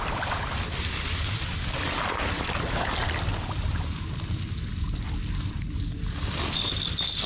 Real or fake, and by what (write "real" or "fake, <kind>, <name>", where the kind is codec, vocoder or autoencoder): real